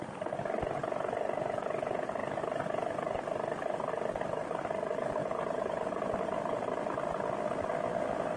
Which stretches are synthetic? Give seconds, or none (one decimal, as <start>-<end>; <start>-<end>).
3.9-4.8; 5.2-6.2